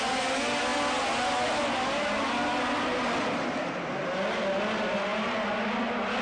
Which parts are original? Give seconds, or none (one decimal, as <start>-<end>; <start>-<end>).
0.0-6.2